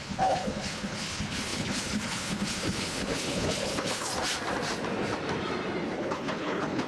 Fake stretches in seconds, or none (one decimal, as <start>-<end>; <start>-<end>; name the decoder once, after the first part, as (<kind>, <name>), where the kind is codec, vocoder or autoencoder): 0.0-4.1 (codec, HILCodec); 6.0-6.9